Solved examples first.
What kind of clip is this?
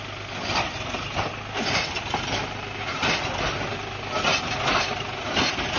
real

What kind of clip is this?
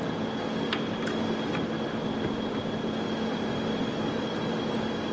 real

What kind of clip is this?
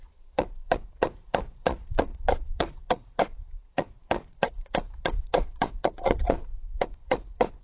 fake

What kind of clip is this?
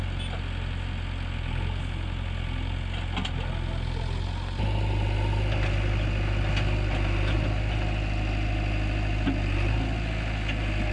real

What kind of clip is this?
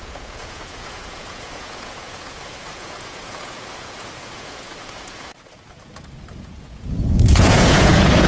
fake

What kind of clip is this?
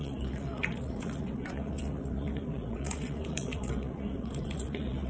fake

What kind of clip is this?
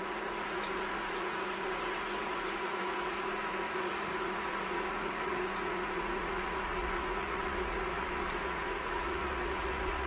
fake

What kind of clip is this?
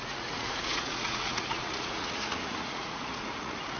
fake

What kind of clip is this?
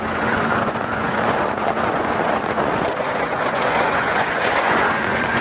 fake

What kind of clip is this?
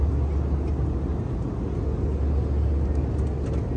real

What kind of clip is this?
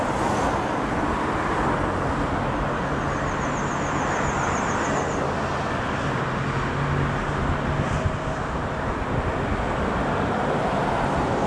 real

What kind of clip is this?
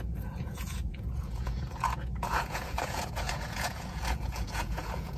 fake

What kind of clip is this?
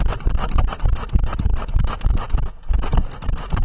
real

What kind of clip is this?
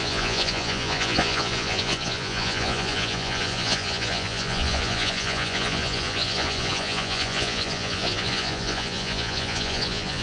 fake